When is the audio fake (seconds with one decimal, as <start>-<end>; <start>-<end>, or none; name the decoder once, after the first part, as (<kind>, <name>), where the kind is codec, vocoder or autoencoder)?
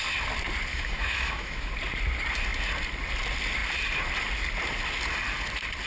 0.7-1.7 (autoencoder, DAC-VAE)